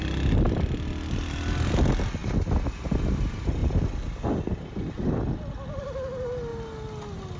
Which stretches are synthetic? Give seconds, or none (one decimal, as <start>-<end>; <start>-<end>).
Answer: none

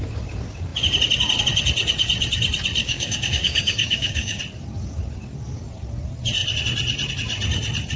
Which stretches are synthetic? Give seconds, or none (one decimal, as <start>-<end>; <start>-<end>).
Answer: 2.8-4.4